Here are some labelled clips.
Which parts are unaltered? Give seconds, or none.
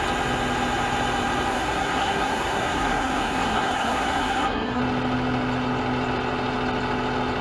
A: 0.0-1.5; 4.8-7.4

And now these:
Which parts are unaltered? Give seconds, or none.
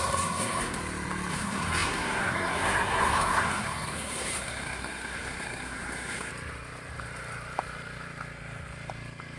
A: 0.8-1.3; 6.3-9.4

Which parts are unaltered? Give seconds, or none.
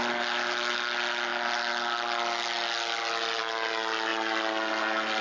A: 0.0-5.2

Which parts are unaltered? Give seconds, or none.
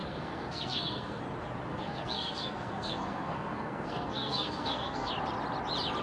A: 1.2-1.7; 5.1-6.0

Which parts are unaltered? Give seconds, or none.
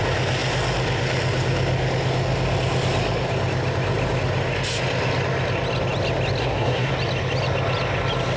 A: 0.0-6.4; 6.9-8.4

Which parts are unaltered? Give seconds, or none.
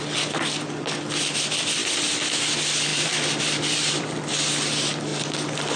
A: 0.0-2.9; 4.3-5.8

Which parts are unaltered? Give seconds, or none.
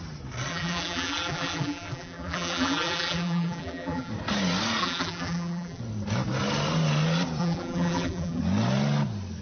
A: 0.0-0.5; 4.1-4.8; 5.8-7.4; 8.4-9.4